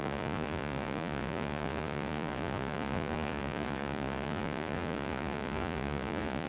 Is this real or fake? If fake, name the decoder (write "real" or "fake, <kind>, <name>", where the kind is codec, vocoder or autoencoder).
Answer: fake, vocoder, Vocos